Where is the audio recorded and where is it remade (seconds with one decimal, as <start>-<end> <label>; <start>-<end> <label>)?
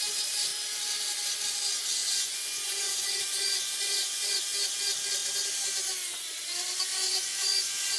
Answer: 0.0-2.0 recorded; 2.0-4.4 remade; 4.4-6.9 recorded; 6.9-8.0 remade